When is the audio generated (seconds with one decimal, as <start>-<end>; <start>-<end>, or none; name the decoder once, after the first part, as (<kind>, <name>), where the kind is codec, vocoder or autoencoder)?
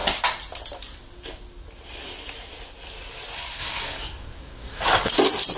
3.6-5.1 (codec, DAC)